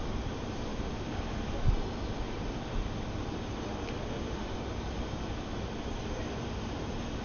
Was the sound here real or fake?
real